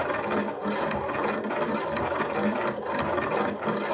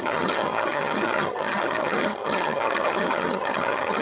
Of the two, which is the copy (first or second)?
second